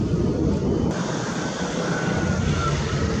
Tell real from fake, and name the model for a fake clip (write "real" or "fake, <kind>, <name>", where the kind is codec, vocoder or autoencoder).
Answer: real